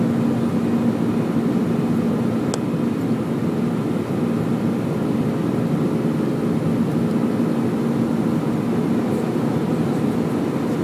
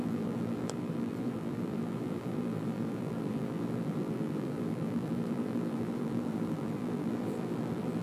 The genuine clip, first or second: first